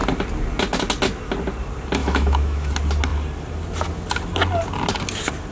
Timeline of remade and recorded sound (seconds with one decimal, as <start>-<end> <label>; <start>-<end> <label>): 0.0-2.0 recorded; 2.0-2.7 remade; 2.7-5.5 recorded